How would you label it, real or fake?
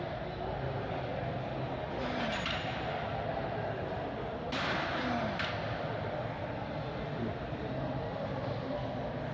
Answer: real